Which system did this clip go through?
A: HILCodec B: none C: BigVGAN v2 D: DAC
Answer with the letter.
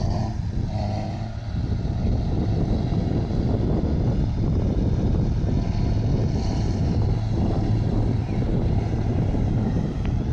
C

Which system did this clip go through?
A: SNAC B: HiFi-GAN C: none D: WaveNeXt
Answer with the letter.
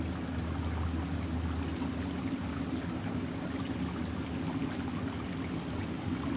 C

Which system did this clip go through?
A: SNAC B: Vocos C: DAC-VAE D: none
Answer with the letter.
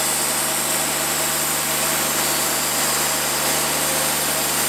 D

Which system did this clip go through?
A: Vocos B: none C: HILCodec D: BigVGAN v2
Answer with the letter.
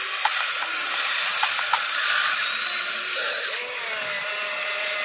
B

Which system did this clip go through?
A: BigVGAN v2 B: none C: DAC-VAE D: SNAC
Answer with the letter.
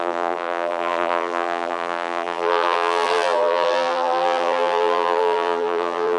A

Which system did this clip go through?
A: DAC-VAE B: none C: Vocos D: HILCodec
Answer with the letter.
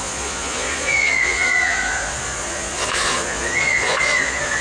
C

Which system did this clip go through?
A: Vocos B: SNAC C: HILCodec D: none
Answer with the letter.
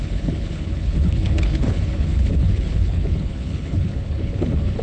C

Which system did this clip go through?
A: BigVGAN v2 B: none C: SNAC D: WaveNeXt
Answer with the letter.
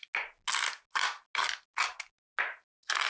B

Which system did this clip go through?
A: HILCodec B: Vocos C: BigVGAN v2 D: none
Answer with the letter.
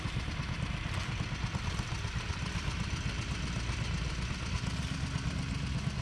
D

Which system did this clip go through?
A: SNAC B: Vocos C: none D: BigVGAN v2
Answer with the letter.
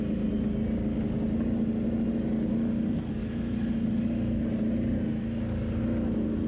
C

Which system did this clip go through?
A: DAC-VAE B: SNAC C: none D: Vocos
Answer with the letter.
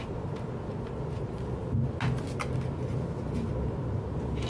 C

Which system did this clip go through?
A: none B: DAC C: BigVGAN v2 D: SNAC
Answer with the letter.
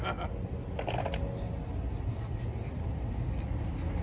A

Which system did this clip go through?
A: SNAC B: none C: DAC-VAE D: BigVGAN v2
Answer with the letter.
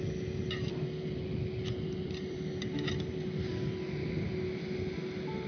B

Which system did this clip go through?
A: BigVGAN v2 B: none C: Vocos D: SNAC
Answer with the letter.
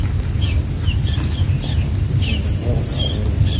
B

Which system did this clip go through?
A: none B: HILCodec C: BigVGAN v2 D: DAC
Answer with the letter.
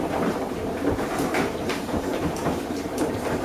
C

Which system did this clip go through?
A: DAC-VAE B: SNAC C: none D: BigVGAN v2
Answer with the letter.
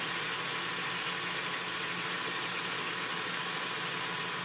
C